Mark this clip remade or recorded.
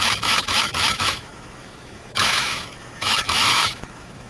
remade